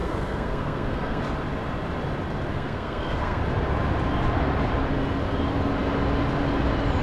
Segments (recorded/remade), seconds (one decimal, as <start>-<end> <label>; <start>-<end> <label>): 0.0-1.2 remade; 1.2-2.5 recorded; 2.5-3.4 remade; 3.4-7.0 recorded